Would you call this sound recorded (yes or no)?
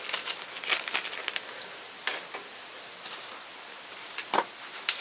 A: yes